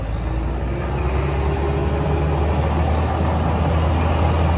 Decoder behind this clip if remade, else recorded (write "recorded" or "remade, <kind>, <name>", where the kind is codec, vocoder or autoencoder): recorded